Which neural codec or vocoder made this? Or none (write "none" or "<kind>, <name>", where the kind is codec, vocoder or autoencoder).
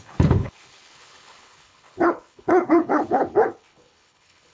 codec, HILCodec